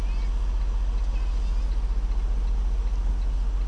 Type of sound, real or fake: real